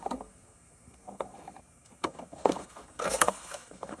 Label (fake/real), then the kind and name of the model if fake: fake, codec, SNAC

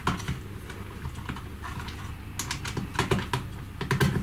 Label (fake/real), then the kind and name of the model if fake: real